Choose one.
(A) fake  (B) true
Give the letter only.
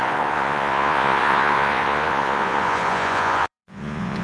A